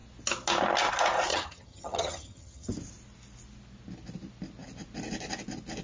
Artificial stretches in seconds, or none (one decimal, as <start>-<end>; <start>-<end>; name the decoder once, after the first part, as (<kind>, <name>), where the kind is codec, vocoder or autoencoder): 1.3-2.7 (vocoder, HiFi-GAN)